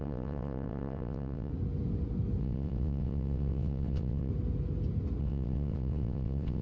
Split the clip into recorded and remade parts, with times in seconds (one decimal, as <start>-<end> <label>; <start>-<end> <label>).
0.0-1.5 remade; 1.5-2.4 recorded; 2.4-4.3 remade; 4.3-5.2 recorded; 5.2-6.6 remade